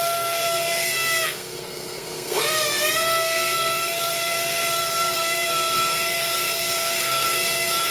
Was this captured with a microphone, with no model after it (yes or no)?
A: no